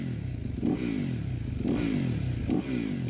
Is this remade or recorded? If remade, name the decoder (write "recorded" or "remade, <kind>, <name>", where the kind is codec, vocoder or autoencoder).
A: recorded